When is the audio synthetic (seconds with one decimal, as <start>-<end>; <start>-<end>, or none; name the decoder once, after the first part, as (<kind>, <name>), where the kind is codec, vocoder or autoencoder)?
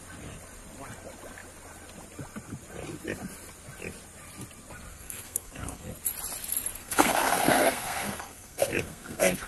4.9-5.9 (codec, SNAC); 6.8-9.5